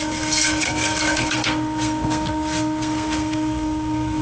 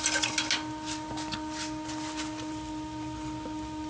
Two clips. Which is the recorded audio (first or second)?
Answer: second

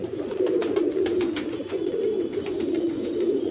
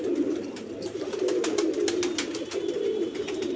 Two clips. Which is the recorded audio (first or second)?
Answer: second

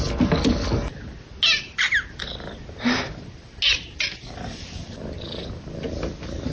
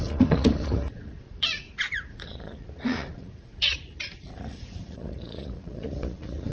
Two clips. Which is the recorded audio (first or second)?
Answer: first